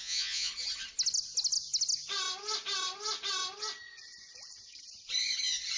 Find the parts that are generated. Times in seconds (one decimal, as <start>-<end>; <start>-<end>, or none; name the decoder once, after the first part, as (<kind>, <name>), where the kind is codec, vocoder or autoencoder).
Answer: 0.0-0.5 (vocoder, Vocos)